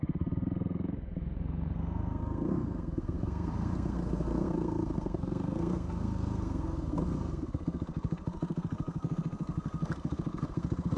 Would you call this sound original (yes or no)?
no